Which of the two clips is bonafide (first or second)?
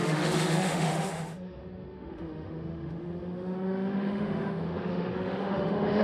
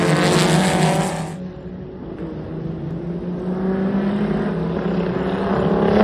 second